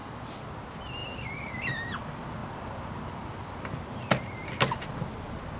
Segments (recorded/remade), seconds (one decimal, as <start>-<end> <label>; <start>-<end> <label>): 0.0-1.0 recorded; 1.0-2.0 remade; 2.0-2.4 recorded; 2.4-3.9 remade; 3.9-5.6 recorded